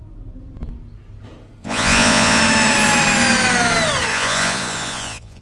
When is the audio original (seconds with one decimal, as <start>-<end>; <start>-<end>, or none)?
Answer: 0.0-1.6; 2.4-4.1